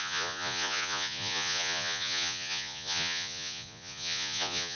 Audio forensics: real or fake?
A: fake